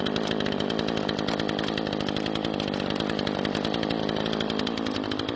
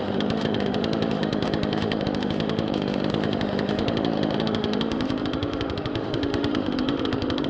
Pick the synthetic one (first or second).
second